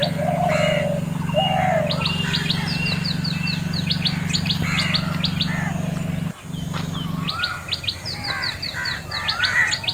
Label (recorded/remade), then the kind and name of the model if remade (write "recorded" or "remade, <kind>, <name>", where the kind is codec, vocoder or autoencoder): recorded